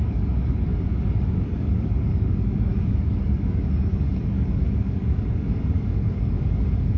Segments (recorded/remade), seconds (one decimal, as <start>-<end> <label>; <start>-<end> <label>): 0.0-7.0 remade